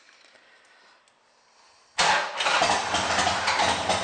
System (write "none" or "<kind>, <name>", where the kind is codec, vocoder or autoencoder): none